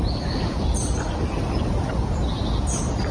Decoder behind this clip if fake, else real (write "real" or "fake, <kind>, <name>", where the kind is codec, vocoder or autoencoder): real